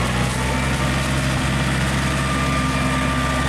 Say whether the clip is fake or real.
real